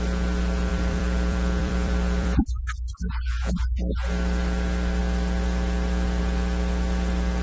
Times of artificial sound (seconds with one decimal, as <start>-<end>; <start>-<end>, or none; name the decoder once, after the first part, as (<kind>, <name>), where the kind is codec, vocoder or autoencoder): 0.7-2.7 (vocoder, BigVGAN v2)

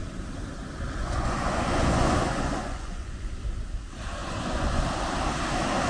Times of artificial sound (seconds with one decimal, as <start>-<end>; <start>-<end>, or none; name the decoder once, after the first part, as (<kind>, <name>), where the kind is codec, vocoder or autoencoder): 1.0-3.3 (vocoder, Vocos); 4.2-4.8

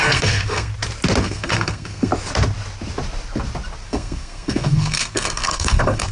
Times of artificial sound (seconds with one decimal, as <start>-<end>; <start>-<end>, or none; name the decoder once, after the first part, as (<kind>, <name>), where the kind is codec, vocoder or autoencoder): 0.0-0.7 (codec, SNAC); 1.2-2.1; 3.9-6.1